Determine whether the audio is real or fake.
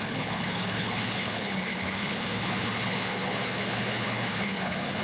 fake